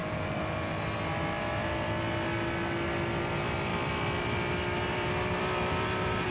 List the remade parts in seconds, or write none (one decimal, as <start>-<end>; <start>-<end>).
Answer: 3.7-6.3

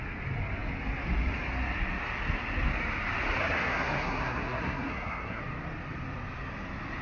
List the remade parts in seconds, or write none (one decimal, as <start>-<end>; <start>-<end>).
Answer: 3.4-5.4

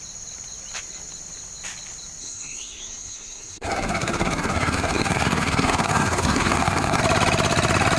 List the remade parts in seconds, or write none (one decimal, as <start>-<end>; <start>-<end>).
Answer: 2.2-7.0

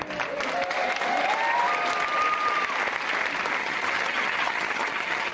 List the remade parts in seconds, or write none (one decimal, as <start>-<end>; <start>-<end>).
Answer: 3.6-5.3

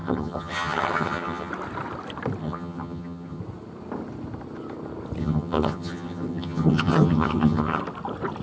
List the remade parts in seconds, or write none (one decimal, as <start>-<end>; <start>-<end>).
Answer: 0.0-1.5; 2.4-3.4; 5.2-7.8